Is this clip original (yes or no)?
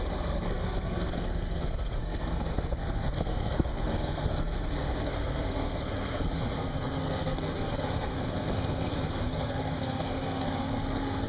no